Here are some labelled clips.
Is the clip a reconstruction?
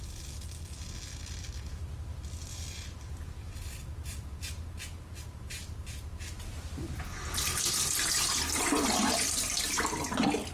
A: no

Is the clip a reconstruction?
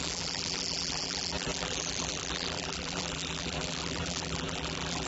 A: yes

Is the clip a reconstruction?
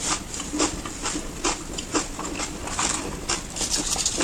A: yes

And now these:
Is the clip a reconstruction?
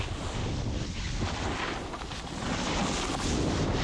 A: no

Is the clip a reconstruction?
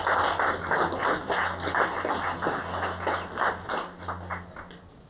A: no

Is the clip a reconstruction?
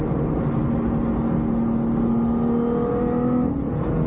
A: no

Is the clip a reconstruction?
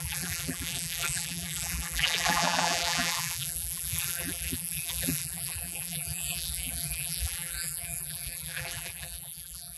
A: yes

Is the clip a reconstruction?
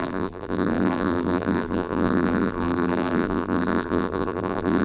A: yes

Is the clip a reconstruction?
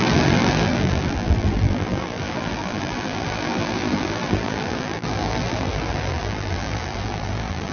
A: yes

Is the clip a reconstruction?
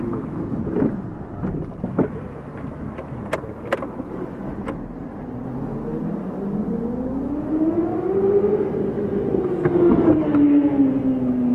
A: no